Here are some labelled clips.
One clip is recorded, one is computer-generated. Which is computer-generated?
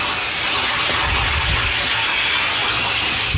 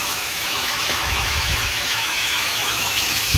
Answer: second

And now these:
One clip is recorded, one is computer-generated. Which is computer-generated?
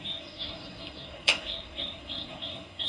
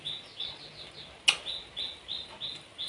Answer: first